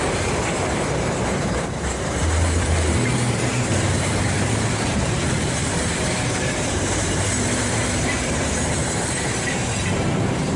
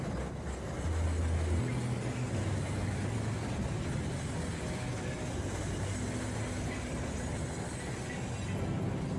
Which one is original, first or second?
second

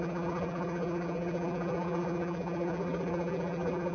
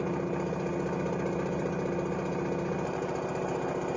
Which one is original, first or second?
second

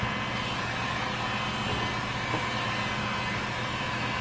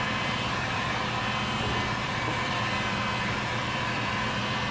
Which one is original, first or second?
first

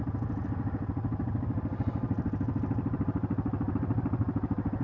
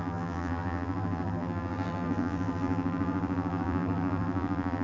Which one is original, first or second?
first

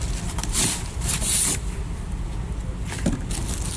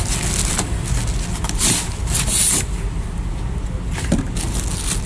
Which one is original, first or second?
second